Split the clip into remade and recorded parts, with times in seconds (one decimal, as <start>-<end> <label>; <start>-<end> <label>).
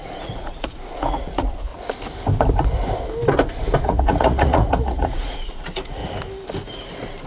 0.0-1.7 remade; 1.7-3.8 recorded; 3.8-6.0 remade; 6.0-7.3 recorded